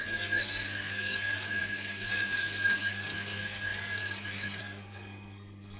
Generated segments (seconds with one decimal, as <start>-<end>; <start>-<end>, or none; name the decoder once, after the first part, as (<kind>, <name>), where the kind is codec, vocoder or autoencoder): 0.0-5.8 (codec, SNAC)